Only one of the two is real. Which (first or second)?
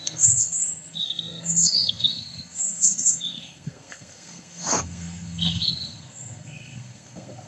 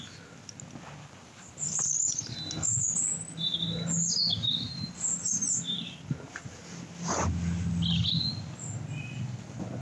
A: second